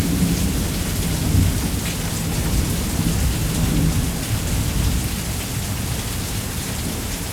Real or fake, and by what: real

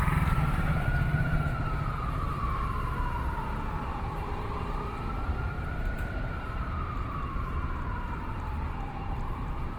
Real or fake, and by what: fake, vocoder, BigVGAN v2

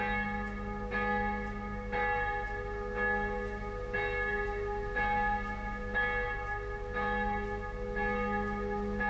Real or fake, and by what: real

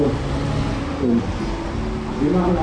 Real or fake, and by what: real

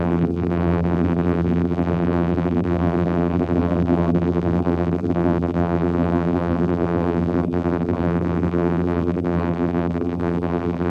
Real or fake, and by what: fake, vocoder, BigVGAN v2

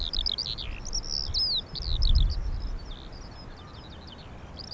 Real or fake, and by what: real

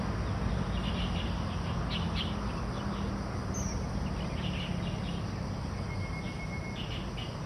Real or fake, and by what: real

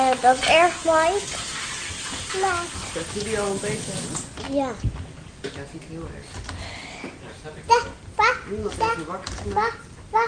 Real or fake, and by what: real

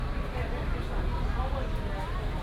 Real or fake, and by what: real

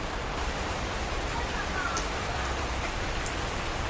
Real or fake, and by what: real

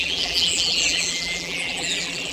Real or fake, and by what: fake, vocoder, BigVGAN v2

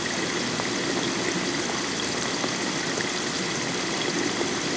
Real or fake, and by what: real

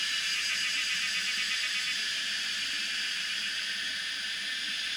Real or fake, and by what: fake, vocoder, BigVGAN v2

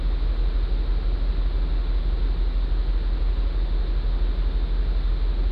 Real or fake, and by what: real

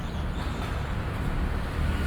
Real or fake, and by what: real